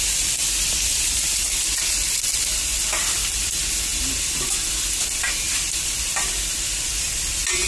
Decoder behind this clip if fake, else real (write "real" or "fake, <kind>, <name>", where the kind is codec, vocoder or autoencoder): real